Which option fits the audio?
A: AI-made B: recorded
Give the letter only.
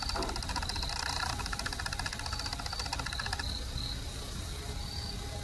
B